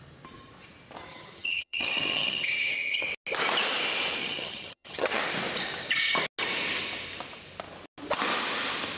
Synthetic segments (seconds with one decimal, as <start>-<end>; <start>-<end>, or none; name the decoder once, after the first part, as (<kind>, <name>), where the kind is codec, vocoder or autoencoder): 1.1-3.0 (vocoder, HiFi-GAN); 4.2-5.2